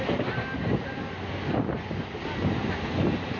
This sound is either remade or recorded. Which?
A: recorded